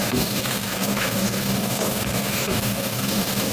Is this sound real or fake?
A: fake